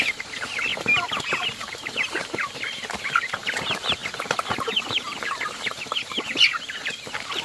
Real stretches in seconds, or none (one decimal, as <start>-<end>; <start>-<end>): 0.7-1.7; 4.0-4.7